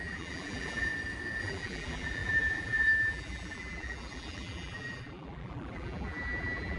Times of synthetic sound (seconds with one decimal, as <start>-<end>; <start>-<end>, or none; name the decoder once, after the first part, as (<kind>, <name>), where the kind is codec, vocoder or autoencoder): 0.0-0.9 (vocoder, BigVGAN v2); 1.4-6.8